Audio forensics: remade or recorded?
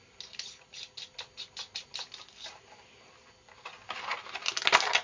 recorded